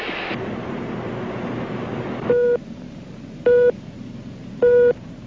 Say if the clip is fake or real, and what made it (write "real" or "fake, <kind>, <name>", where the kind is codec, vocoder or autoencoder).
real